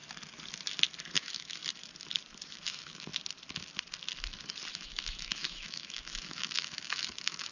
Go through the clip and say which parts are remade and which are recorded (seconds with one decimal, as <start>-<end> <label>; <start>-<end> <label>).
0.0-1.1 recorded; 1.1-1.6 remade; 1.6-2.5 recorded; 2.5-3.1 remade; 3.1-4.7 recorded; 4.7-7.5 remade